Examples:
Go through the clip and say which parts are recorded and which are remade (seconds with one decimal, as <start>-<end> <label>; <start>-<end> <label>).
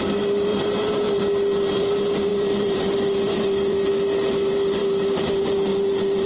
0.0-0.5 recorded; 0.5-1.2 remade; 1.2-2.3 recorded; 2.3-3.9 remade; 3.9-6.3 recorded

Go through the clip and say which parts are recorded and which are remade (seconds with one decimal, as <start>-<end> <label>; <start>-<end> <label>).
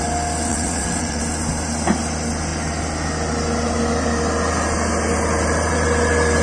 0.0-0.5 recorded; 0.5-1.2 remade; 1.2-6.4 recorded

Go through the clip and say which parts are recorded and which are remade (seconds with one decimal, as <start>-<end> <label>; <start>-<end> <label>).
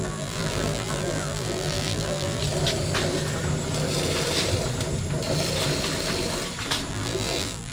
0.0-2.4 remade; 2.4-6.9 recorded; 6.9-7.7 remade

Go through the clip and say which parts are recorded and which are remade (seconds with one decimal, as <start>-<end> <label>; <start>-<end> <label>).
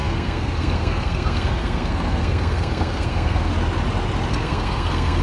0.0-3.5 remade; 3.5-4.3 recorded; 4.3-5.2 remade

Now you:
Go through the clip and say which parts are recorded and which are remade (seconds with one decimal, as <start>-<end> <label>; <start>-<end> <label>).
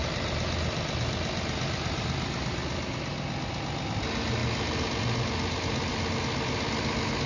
0.0-7.3 recorded